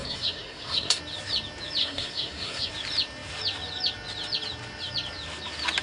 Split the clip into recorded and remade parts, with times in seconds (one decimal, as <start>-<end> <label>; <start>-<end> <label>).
0.0-1.0 remade; 1.0-1.8 recorded; 1.8-2.7 remade; 2.7-5.8 recorded